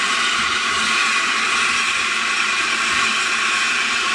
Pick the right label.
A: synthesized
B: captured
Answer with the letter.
A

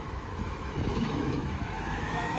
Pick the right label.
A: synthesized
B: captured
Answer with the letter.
A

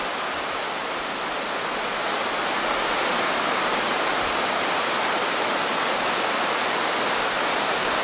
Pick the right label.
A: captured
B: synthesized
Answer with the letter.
A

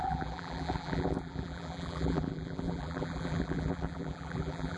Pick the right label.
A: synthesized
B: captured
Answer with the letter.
A